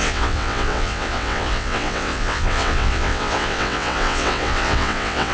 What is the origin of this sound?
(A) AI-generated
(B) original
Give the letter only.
A